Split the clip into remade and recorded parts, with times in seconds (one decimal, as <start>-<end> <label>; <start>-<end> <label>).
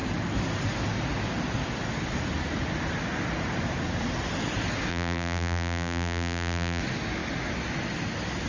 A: 0.0-4.9 recorded; 4.9-6.8 remade; 6.8-8.5 recorded